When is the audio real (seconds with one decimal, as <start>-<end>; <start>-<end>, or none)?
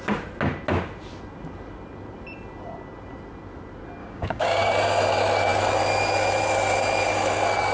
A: 0.0-4.0; 4.7-7.7